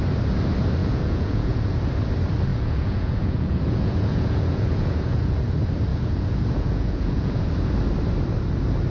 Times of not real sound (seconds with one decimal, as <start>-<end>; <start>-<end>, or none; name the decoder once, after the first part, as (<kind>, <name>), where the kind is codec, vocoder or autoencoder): 0.8-1.8 (vocoder, Vocos); 2.5-5.4; 5.9-7.7